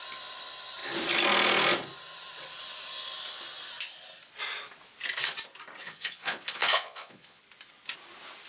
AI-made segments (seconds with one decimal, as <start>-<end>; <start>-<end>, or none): 5.8-7.4